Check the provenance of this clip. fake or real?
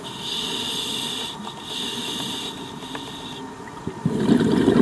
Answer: fake